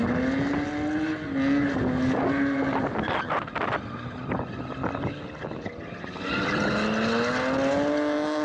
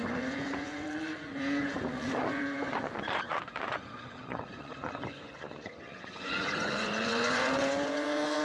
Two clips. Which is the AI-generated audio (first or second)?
second